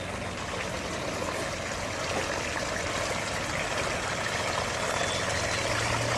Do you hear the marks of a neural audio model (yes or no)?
no